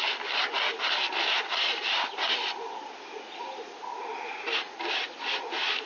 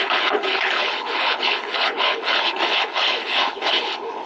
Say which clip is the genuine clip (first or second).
first